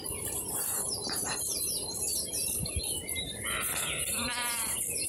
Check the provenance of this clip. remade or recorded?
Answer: remade